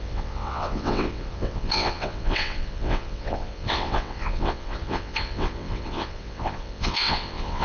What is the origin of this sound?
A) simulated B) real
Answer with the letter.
A